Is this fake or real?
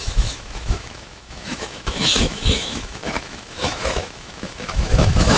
fake